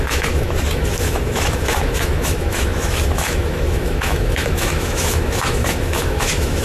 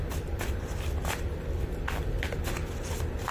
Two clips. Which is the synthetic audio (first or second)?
first